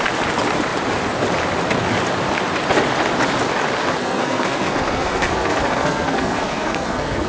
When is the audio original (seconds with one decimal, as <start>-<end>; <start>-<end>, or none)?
0.0-4.0